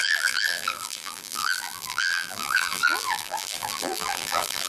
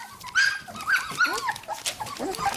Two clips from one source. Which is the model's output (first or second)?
first